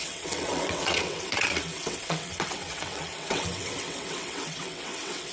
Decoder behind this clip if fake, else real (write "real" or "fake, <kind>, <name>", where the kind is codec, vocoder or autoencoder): fake, vocoder, WaveNeXt